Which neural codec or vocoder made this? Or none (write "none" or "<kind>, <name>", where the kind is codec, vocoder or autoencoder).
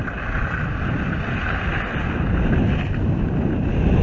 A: none